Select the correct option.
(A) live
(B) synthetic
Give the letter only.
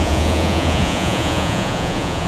B